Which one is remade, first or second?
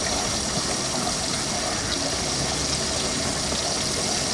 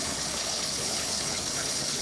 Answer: second